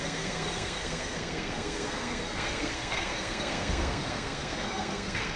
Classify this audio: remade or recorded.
remade